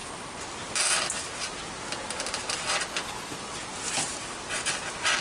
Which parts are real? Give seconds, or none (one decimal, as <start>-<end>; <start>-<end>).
0.0-5.2